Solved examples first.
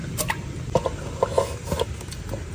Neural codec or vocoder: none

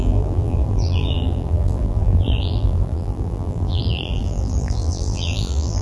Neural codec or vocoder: vocoder, BigVGAN v2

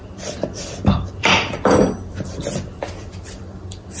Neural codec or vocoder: vocoder, BigVGAN v2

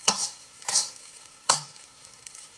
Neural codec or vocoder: codec, SNAC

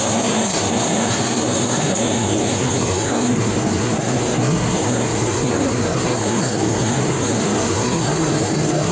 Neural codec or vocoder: codec, SNAC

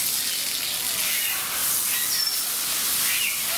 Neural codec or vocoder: none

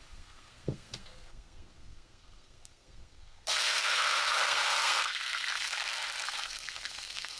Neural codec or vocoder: codec, SNAC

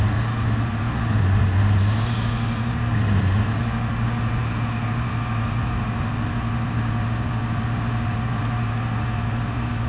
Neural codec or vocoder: none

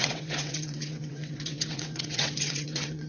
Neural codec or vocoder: vocoder, WaveNeXt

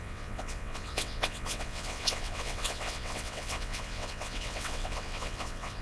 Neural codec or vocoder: vocoder, WaveNeXt